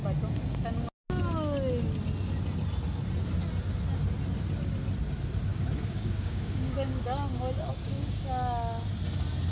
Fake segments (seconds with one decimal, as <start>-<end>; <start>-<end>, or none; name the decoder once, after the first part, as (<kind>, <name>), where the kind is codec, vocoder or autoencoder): 5.5-7.0 (codec, DAC); 7.7-8.3